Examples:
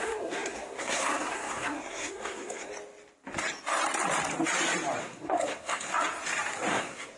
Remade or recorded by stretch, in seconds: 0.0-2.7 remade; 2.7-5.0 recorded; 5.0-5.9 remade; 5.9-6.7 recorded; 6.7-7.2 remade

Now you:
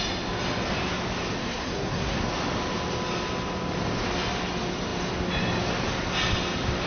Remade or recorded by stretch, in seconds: 0.0-1.4 recorded; 1.4-2.2 remade; 2.2-6.9 recorded

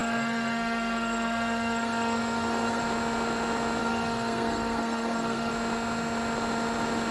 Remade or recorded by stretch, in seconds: 0.0-2.8 remade; 2.8-3.8 recorded; 3.8-5.5 remade; 5.5-7.1 recorded

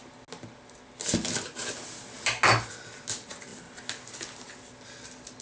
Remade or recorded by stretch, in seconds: 0.0-5.4 recorded

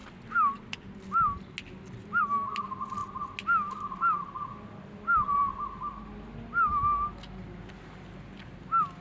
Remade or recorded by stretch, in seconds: 0.0-9.0 recorded

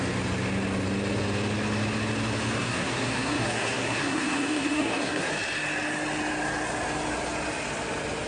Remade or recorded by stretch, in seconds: 0.0-2.6 recorded; 2.6-5.3 remade; 5.3-8.3 recorded